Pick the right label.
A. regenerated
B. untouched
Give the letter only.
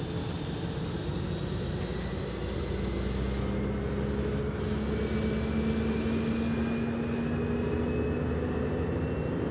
B